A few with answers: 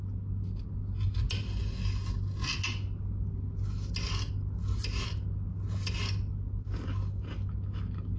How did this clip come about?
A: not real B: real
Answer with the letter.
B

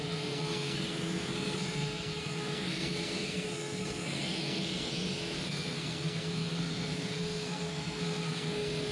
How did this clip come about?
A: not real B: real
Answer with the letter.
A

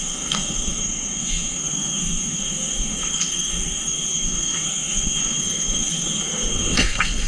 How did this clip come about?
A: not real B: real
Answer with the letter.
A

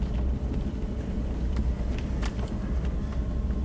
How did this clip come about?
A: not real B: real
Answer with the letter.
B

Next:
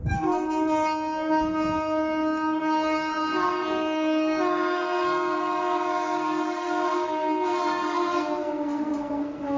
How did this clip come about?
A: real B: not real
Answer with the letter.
B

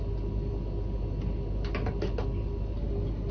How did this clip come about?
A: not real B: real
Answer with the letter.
B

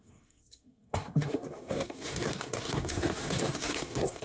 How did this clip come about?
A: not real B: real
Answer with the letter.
A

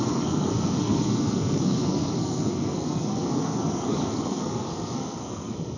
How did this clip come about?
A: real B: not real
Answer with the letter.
B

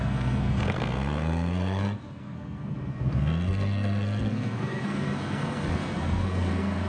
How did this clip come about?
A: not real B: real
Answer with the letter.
A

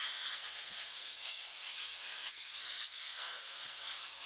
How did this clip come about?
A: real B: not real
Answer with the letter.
B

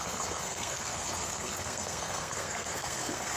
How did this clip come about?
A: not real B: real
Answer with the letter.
A